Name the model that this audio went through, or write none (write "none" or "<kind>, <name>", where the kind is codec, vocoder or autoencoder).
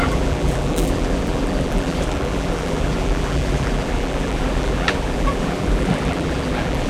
vocoder, BigVGAN v2